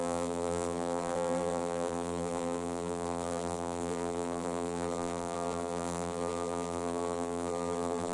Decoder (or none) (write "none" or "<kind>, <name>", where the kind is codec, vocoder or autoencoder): vocoder, BigVGAN v2